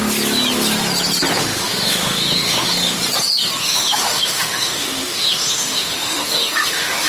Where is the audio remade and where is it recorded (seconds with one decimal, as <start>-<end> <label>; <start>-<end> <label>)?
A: 0.0-1.4 recorded; 1.4-3.0 remade; 3.0-3.6 recorded; 3.6-7.1 remade